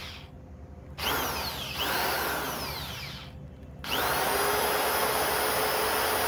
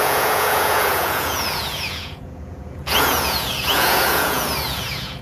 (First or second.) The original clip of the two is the first